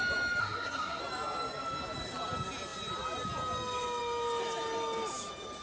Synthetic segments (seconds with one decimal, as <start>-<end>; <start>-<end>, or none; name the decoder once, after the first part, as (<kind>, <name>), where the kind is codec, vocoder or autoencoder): 0.4-1.0 (codec, SNAC)